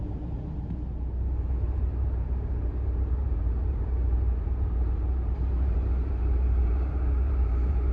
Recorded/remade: remade